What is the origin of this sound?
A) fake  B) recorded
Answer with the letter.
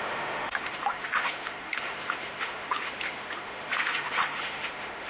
A